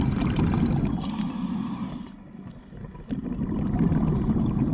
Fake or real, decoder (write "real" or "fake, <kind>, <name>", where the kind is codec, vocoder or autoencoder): real